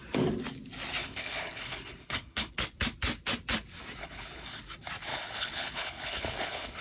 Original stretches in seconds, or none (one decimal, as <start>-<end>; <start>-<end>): 0.0-1.0; 2.5-4.0; 4.6-5.1